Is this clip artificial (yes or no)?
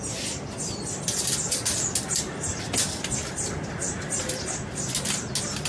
no